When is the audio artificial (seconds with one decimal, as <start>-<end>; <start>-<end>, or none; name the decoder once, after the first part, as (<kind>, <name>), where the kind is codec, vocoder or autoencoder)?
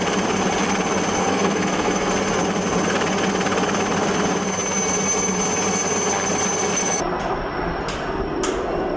1.2-2.1 (codec, SNAC)